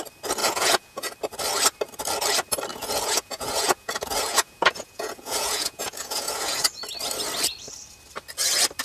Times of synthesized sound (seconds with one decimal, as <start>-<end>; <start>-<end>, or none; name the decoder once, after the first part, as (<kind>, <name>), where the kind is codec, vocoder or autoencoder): 0.4-1.1 (vocoder, Vocos); 2.7-6.8